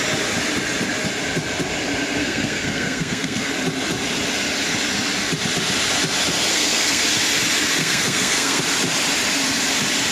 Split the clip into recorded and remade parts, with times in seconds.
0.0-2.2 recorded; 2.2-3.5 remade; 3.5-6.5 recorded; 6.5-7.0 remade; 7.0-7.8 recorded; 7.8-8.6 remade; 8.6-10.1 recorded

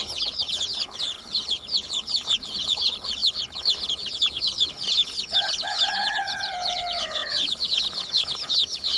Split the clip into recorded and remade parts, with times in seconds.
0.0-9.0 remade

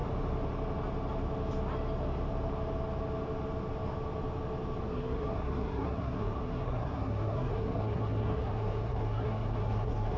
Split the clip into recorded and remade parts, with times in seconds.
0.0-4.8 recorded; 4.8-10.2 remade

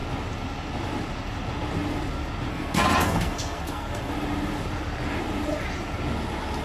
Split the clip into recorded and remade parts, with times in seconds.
0.0-2.5 recorded; 2.5-4.1 remade; 4.1-6.6 recorded

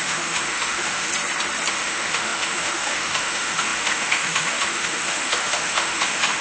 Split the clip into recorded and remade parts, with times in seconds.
0.0-1.1 remade; 1.1-1.7 recorded; 1.7-6.4 remade

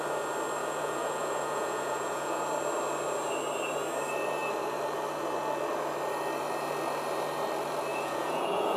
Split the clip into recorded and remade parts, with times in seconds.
0.0-0.6 recorded; 0.6-2.4 remade; 2.4-7.9 recorded; 7.9-8.8 remade